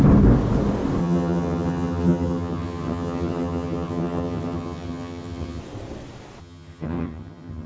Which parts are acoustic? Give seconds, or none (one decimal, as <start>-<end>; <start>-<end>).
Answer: 0.0-1.0; 5.6-6.4